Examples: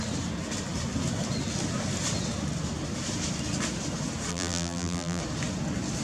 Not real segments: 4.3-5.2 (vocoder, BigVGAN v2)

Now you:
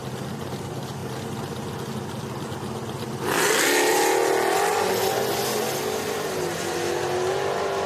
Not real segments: none